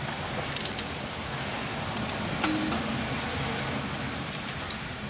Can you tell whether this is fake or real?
real